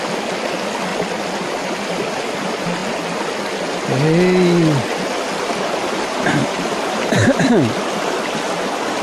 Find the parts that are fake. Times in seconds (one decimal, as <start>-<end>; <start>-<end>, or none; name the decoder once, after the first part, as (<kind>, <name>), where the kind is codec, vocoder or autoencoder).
5.8-7.4 (vocoder, BigVGAN v2)